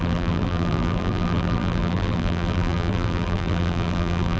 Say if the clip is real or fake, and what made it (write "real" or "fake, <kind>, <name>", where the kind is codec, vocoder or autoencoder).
fake, vocoder, BigVGAN v2